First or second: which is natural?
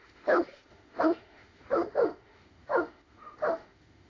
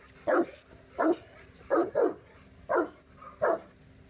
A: second